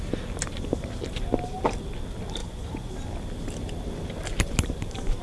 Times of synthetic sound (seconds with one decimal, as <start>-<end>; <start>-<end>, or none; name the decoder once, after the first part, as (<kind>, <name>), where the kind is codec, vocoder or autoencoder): 2.4-2.9 (vocoder, Vocos)